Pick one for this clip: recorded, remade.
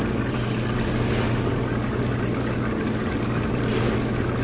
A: recorded